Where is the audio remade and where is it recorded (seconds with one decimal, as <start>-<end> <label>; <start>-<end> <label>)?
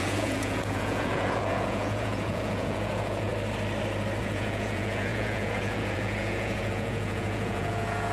0.0-3.3 remade; 3.3-4.2 recorded; 4.2-8.1 remade